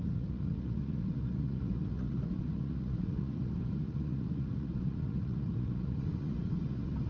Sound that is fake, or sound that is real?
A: fake